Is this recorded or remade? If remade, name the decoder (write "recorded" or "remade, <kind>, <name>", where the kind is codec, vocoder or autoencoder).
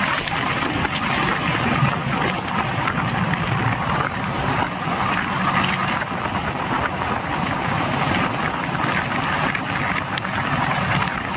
recorded